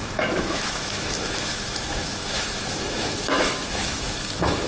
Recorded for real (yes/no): no